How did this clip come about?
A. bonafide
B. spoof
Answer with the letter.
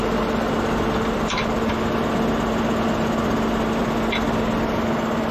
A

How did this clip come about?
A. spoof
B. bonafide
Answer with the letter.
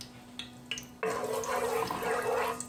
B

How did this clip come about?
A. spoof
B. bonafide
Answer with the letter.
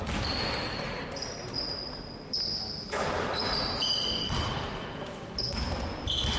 B